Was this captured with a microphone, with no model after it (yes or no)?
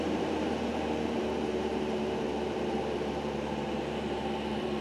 no